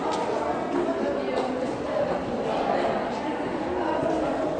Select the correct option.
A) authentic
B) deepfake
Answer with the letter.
A